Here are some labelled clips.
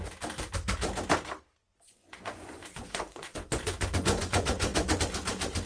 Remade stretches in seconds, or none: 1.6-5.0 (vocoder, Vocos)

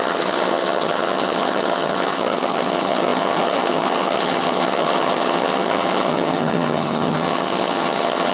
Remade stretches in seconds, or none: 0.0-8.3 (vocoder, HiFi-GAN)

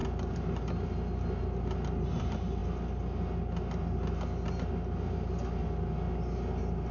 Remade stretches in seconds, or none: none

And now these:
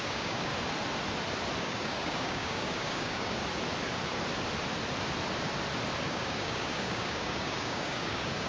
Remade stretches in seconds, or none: 0.0-0.5 (codec, DAC); 1.6-3.4; 6.1-8.5